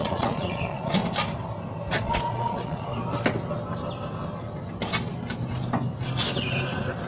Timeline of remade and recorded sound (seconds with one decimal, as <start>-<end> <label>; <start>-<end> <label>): 0.0-1.0 remade; 1.0-1.9 recorded; 1.9-2.9 remade; 2.9-7.1 recorded